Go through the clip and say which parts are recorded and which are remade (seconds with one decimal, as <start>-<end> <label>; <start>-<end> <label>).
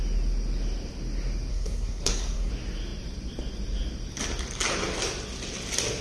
0.0-1.5 recorded; 1.5-2.5 remade; 2.5-6.0 recorded